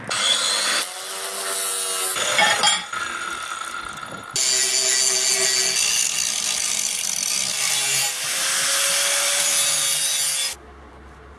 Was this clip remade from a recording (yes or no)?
no